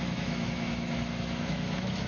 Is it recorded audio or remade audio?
remade